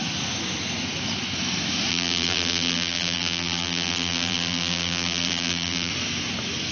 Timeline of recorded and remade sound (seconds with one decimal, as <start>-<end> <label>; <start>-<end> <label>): 0.0-1.9 recorded; 1.9-5.9 remade; 5.9-6.7 recorded